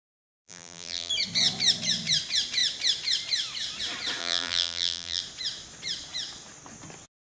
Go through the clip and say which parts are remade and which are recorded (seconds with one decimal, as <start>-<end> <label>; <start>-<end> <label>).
0.0-0.4 recorded; 0.4-1.1 remade; 1.1-4.2 recorded; 4.2-5.2 remade; 5.2-7.4 recorded